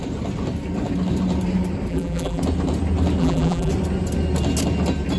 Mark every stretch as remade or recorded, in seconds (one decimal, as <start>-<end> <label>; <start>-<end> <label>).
0.0-1.9 recorded; 1.9-2.4 remade; 2.4-3.2 recorded; 3.2-3.7 remade; 3.7-5.2 recorded

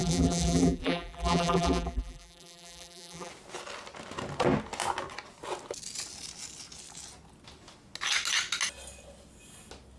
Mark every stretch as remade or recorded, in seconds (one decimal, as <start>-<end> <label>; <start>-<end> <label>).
0.0-3.3 remade; 3.3-10.0 recorded

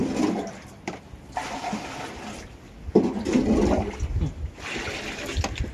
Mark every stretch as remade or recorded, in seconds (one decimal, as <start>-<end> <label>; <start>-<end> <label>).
0.0-3.4 remade; 3.4-5.7 recorded

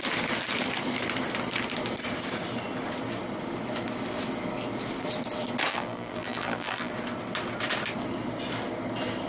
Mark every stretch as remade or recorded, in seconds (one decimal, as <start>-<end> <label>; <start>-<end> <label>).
0.0-5.7 recorded; 5.7-6.9 remade; 6.9-9.3 recorded

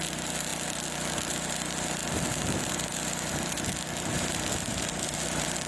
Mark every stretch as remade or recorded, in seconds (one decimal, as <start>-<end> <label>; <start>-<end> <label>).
0.0-5.7 recorded

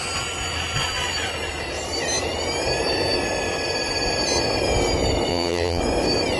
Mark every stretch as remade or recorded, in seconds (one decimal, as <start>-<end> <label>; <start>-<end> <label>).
0.0-5.3 recorded; 5.3-5.8 remade; 5.8-6.4 recorded

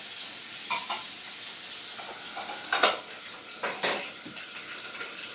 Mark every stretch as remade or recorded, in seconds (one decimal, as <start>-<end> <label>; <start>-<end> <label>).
0.0-5.3 recorded

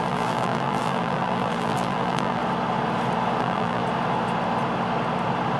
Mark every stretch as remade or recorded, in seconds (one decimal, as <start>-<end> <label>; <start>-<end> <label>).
0.0-2.4 remade; 2.4-3.4 recorded; 3.4-3.8 remade; 3.8-5.6 recorded